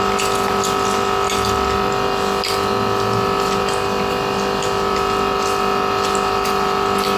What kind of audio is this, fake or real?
real